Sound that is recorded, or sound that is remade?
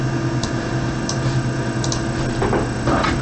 recorded